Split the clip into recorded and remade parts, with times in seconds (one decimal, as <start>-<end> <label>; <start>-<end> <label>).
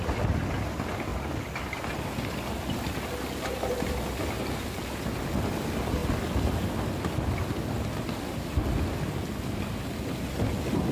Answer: 0.0-10.9 recorded